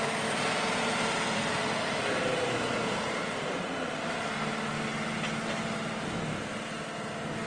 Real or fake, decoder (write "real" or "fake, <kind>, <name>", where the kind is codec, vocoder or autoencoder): real